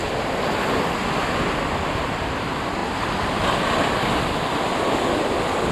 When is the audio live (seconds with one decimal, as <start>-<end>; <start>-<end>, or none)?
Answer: 0.0-5.7